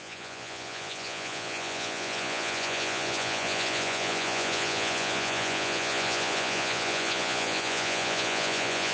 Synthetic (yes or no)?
yes